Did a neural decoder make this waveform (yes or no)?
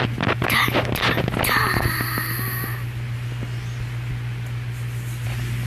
no